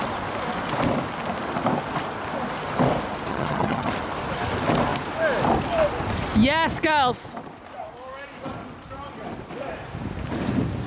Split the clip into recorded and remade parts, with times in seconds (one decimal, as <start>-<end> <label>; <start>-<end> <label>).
0.0-3.3 recorded; 3.3-3.9 remade; 3.9-10.9 recorded